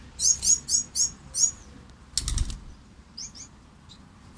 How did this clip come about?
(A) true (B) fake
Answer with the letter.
A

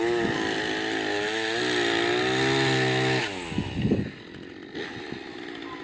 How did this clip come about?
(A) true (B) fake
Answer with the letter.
A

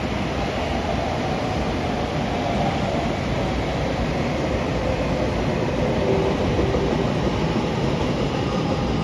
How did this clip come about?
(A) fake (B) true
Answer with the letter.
B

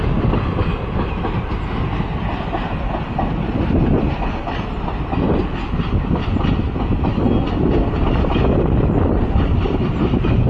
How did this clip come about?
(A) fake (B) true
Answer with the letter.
B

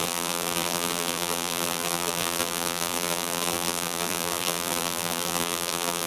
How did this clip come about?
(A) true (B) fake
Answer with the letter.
B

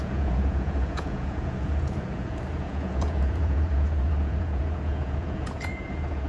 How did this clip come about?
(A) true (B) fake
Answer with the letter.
B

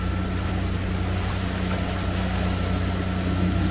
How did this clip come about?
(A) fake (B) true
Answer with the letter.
B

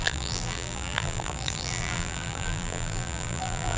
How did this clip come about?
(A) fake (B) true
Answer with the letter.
A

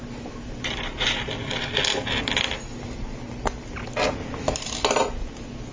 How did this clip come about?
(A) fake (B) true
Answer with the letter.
B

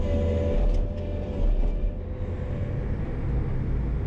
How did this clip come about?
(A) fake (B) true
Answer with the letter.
B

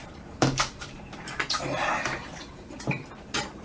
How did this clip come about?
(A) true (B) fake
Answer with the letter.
B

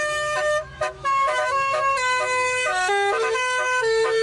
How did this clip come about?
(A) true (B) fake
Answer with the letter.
B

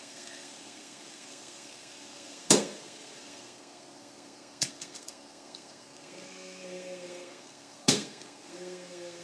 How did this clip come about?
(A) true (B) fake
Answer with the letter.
B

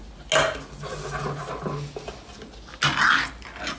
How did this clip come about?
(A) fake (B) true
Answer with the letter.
B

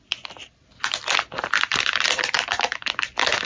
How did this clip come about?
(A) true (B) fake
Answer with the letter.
A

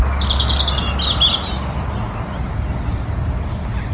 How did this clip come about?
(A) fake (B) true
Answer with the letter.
B